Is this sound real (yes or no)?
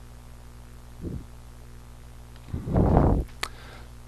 yes